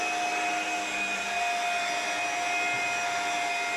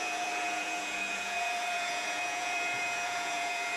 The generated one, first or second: second